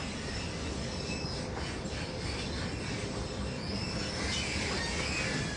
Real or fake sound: real